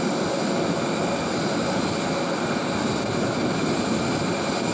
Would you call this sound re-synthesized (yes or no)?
no